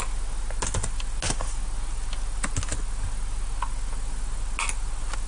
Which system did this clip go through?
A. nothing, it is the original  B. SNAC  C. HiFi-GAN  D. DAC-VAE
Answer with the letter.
A